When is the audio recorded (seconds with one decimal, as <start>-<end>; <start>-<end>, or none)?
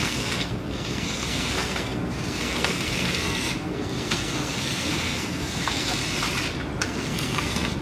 6.0-6.8